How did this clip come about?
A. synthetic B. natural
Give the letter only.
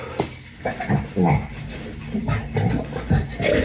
B